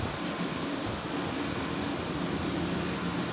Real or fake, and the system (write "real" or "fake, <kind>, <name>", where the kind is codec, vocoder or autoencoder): real